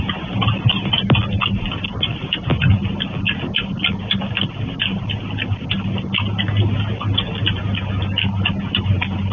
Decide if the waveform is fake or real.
real